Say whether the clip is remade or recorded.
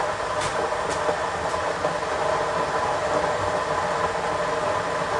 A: recorded